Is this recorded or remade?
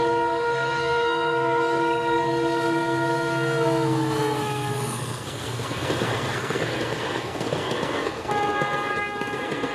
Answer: remade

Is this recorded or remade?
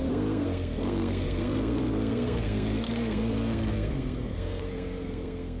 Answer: remade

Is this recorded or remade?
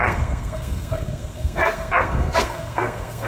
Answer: remade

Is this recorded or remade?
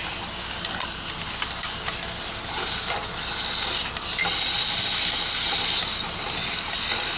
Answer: recorded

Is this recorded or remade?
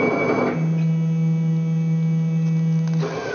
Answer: recorded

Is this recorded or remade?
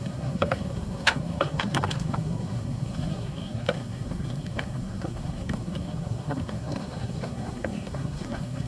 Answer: remade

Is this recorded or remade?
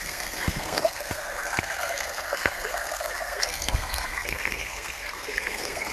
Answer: remade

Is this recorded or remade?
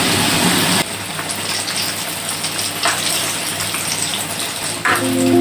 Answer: recorded